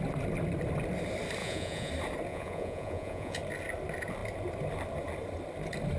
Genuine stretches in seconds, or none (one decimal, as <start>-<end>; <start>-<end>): 0.0-1.4; 1.9-2.3; 3.4-6.0